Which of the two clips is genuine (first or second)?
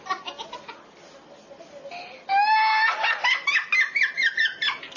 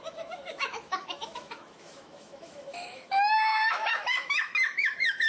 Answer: first